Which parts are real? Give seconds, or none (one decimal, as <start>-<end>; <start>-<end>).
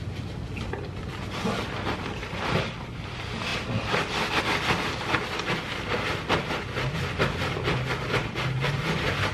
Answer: 0.0-9.3